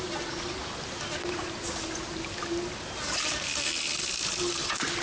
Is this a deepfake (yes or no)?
no